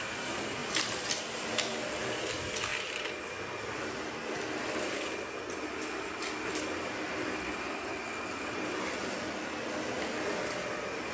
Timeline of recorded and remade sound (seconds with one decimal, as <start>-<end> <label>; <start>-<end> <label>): 0.0-11.1 recorded